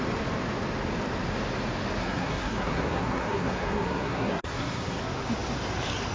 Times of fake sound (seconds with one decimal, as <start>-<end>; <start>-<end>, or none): 2.0-5.0